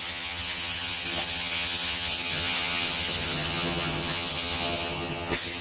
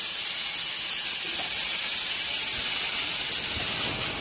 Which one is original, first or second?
second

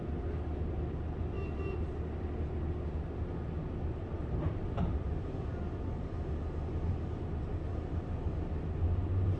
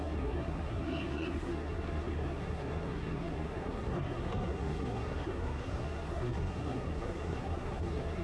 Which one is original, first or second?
first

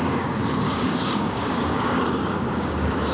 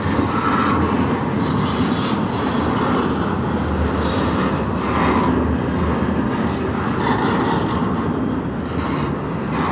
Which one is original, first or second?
second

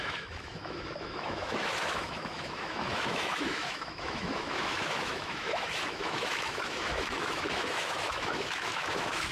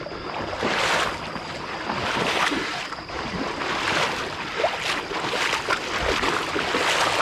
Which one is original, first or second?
second